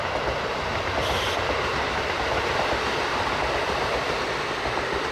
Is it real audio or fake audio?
real